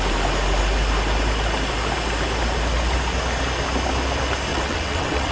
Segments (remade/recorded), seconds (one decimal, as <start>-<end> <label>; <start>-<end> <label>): 0.0-4.5 recorded; 4.5-5.3 remade